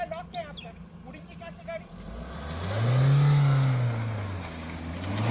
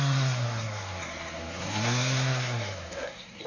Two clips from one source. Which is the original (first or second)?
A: first